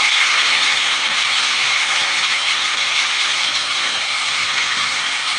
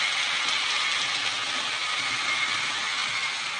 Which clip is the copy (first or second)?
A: first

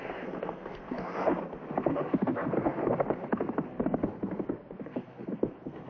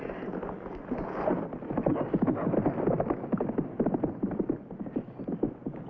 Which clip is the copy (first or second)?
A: first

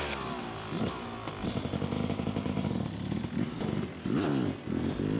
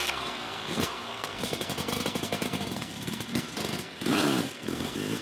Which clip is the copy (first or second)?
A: second